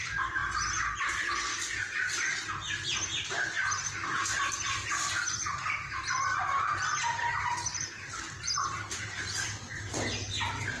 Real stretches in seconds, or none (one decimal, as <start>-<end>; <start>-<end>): 0.0-7.7; 9.6-10.8